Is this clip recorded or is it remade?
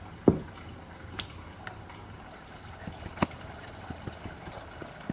recorded